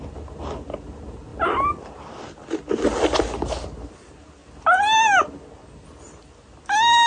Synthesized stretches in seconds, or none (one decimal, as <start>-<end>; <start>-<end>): 1.3-1.9